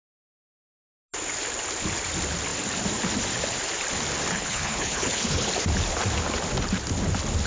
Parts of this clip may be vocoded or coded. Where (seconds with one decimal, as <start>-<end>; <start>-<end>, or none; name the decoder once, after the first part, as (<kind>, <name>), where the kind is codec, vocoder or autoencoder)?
4.3-5.5 (codec, HILCodec)